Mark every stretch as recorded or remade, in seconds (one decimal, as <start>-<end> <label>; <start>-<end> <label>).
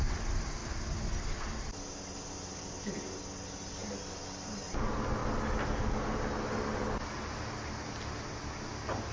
0.0-9.1 recorded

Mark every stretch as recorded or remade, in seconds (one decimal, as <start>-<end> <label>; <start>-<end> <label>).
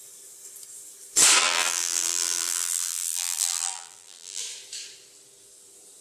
0.0-1.4 recorded; 1.4-4.4 remade; 4.4-6.0 recorded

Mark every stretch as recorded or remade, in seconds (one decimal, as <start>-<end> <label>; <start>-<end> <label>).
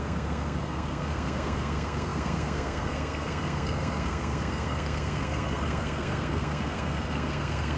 0.0-7.8 remade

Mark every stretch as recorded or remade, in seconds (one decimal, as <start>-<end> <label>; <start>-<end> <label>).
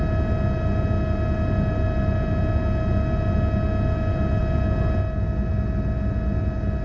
0.0-6.8 recorded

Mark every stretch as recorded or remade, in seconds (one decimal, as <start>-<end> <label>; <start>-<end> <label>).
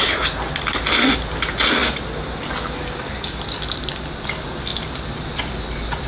0.0-6.1 recorded